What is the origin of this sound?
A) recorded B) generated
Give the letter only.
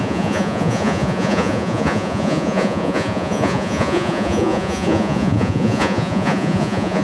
B